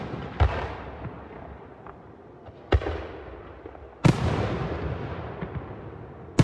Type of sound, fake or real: real